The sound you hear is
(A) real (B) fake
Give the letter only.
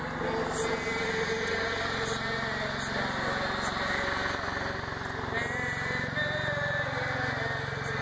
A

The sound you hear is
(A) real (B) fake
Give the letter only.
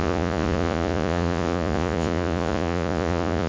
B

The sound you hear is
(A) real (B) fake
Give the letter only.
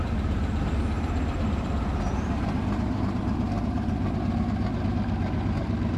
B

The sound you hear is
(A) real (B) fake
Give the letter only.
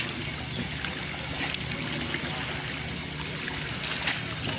A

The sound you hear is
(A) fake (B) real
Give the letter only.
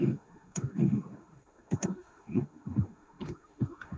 A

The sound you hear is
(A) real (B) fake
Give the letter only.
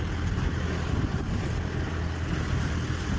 A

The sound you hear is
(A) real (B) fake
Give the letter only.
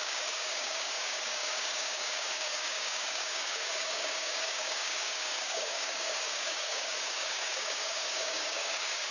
B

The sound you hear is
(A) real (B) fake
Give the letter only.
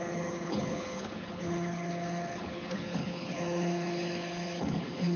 B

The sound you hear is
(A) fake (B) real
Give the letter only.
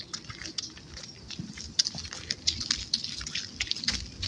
B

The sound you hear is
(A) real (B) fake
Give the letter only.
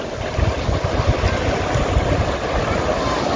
A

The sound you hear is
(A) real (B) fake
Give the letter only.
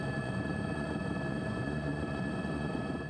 B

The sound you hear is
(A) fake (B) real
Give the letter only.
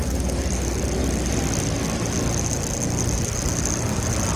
B